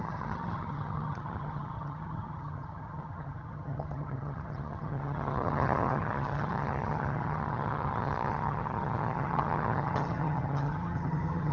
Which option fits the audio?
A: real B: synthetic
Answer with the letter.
B